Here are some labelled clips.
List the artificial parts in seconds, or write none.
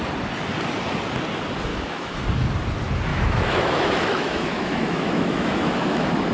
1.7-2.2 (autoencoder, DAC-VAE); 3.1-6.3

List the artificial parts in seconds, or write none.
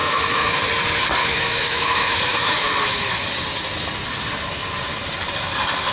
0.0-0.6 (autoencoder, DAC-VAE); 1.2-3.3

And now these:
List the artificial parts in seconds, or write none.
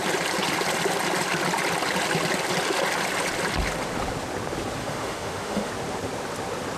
4.8-5.7 (autoencoder, DAC-VAE)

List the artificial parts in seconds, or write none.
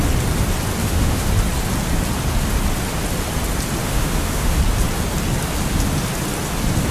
0.8-1.3 (autoencoder, DAC-VAE); 3.8-4.6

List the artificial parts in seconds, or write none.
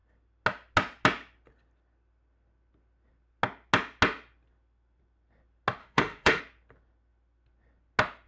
5.8-6.4 (autoencoder, DAC-VAE)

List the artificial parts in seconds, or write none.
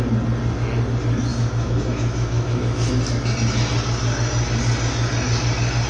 1.3-2.9 (autoencoder, DAC-VAE)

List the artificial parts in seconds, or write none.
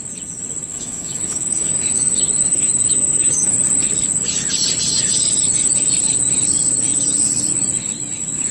0.7-3.5 (autoencoder, DAC-VAE)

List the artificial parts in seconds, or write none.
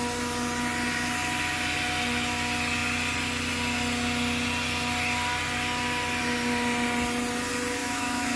7.8-8.4 (autoencoder, DAC-VAE)